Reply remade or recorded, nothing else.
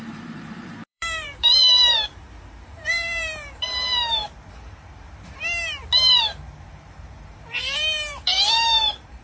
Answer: remade